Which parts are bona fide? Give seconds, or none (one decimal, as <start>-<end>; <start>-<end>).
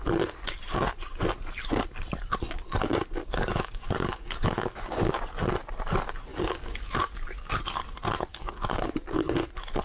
0.0-3.2; 5.1-6.3; 6.9-8.3; 9.0-9.8